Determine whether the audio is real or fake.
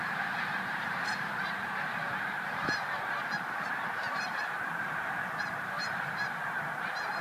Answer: fake